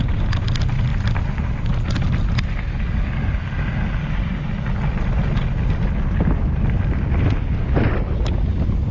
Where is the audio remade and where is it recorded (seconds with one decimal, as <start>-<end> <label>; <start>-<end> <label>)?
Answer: 0.0-8.9 recorded